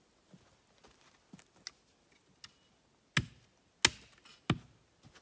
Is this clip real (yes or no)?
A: yes